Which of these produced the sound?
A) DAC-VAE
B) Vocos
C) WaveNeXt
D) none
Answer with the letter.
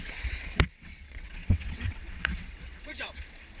C